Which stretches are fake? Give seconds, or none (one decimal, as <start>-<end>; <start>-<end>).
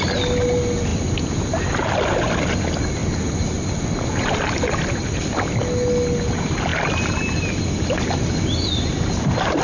none